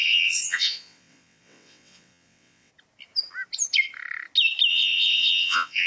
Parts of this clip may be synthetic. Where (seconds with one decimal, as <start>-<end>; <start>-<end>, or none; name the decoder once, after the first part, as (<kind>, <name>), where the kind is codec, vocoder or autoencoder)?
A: 0.0-2.7 (vocoder, WaveNeXt); 4.7-5.9